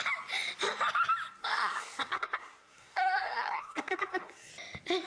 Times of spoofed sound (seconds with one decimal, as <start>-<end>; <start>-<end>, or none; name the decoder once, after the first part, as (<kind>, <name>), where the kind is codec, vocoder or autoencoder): 1.4-4.5 (codec, SNAC)